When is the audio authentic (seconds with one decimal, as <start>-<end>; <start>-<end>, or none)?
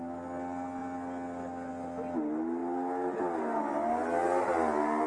0.0-5.1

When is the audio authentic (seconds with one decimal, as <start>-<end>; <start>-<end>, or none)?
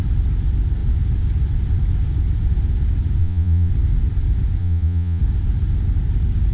0.0-3.2; 3.7-4.6; 5.2-6.5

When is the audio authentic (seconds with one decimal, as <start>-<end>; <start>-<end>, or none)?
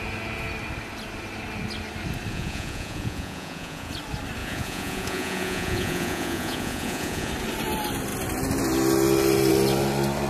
0.0-2.3; 3.9-4.4; 7.3-10.3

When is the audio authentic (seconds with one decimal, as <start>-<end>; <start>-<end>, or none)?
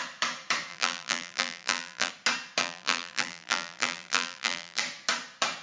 0.0-0.7; 2.1-2.6; 4.8-5.6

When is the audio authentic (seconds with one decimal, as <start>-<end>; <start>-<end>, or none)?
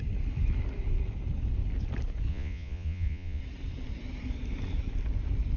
0.0-2.3; 3.4-5.6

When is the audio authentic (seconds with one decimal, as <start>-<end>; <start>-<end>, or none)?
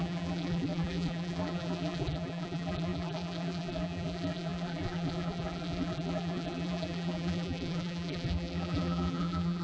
none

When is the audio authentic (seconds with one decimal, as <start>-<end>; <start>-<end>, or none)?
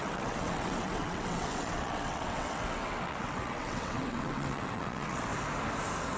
5.3-6.2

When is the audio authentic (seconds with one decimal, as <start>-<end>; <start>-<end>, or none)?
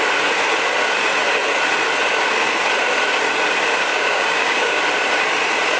0.0-3.9; 4.8-5.8